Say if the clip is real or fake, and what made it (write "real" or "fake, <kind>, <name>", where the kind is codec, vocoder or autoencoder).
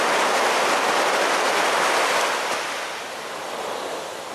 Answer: real